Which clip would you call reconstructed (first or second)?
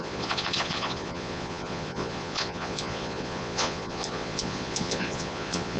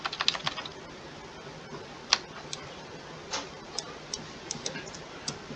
first